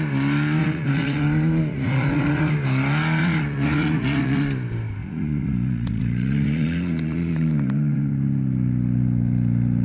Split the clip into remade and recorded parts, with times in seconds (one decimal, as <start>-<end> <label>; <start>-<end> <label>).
0.0-0.6 recorded; 0.6-1.2 remade; 1.2-1.7 recorded; 1.7-2.5 remade; 2.5-3.2 recorded; 3.2-4.4 remade; 4.4-5.0 recorded; 5.0-8.1 remade; 8.1-9.8 recorded